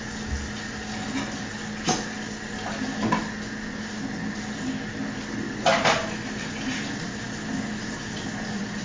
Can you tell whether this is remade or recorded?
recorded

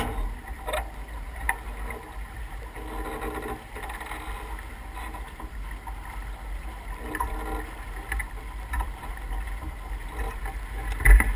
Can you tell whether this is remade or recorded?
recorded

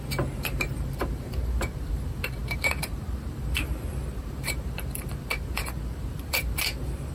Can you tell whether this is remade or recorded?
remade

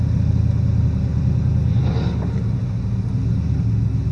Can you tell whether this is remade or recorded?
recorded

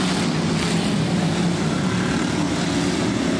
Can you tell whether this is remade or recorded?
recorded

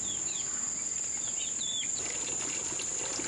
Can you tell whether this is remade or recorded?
recorded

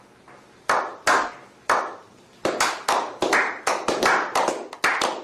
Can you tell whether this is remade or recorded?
recorded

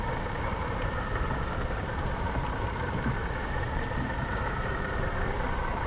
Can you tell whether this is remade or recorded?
remade